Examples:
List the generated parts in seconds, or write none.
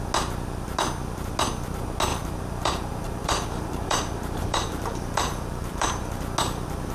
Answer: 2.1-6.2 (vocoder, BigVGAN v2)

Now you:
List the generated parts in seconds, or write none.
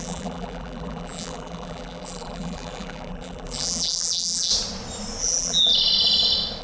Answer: 0.0-4.5 (vocoder, BigVGAN v2); 5.2-5.7